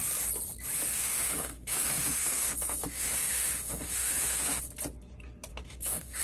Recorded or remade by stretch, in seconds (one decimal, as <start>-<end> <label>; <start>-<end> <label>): 0.0-0.9 recorded; 0.9-4.6 remade; 4.6-5.5 recorded; 5.5-6.2 remade